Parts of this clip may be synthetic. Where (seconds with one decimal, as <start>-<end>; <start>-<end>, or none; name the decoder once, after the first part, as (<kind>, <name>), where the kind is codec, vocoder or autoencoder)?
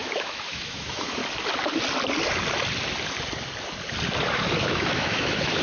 0.0-1.2 (autoencoder, DAC-VAE); 4.6-5.6